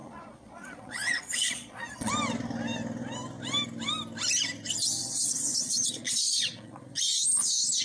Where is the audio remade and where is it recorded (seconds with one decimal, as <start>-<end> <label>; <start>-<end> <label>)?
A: 0.0-2.1 remade; 2.1-5.0 recorded; 5.0-7.0 remade; 7.0-7.8 recorded